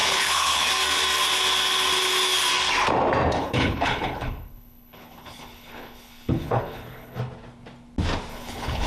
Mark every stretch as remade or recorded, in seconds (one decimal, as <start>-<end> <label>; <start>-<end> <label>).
0.0-0.7 remade; 0.7-3.4 recorded; 3.4-7.2 remade; 7.2-8.3 recorded; 8.3-8.9 remade